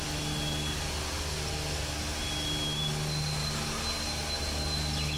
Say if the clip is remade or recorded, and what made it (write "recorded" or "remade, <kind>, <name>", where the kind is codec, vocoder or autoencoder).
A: recorded